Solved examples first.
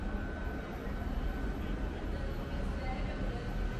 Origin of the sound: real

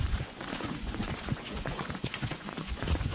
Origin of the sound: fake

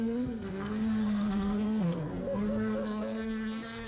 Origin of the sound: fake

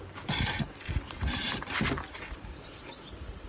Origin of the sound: real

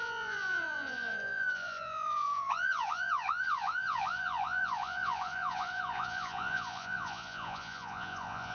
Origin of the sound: fake